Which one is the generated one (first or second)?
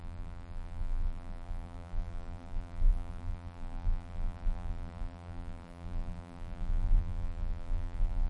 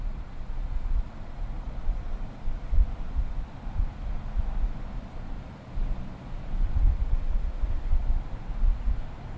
first